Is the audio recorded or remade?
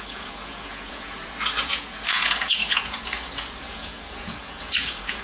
remade